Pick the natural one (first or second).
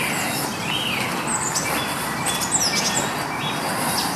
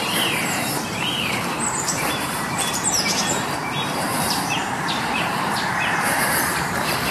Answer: first